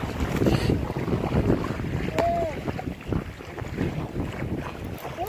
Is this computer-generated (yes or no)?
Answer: no